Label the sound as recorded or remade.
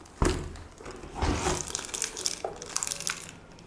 recorded